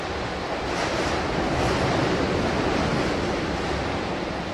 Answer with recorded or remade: recorded